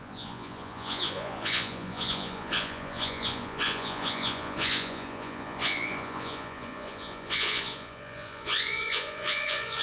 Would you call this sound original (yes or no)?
no